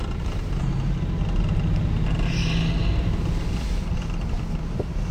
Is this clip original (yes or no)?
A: yes